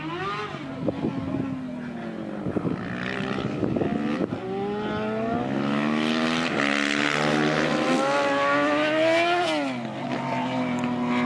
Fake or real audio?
real